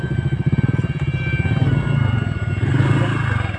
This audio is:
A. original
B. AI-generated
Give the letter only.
A